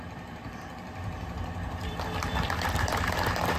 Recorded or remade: remade